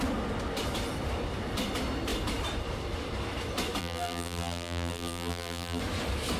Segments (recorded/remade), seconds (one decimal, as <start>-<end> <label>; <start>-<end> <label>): 0.0-3.8 recorded; 3.8-5.8 remade; 5.8-6.4 recorded